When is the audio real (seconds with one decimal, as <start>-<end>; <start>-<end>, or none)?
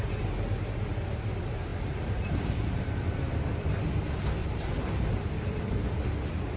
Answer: 0.0-1.7; 3.2-4.4; 6.0-6.6